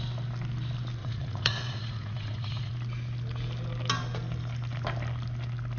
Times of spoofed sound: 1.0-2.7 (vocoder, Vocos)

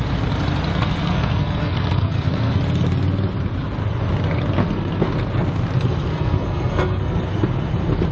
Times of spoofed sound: 0.7-2.6 (codec, SNAC); 4.6-5.1; 6.1-7.2

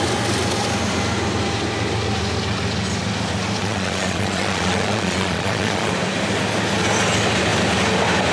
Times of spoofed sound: 3.6-5.9 (vocoder, Vocos)

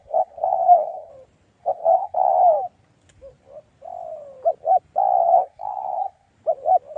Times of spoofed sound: 0.0-1.1 (codec, SNAC); 1.6-2.3; 5.2-6.3

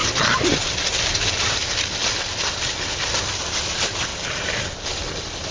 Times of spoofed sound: 1.4-2.0 (vocoder, BigVGAN v2); 3.2-4.1; 5.0-5.5

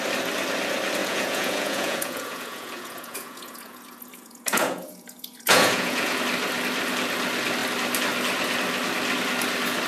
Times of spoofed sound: 1.0-6.2 (vocoder, Vocos)